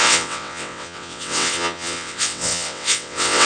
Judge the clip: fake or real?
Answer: fake